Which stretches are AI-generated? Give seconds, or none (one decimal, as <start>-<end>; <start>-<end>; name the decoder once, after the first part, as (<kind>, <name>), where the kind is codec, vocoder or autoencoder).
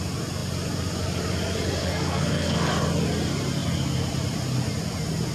1.8-2.7 (codec, SNAC)